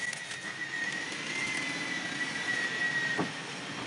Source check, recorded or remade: recorded